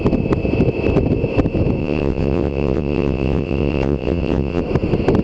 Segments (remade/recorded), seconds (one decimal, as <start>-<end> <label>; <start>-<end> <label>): 0.0-1.8 recorded; 1.8-4.6 remade; 4.6-5.2 recorded